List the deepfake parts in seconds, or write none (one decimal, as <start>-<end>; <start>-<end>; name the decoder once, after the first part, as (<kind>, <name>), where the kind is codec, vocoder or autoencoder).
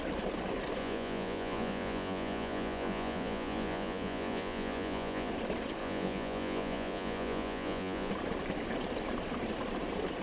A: 0.8-5.3 (vocoder, Vocos); 5.8-8.1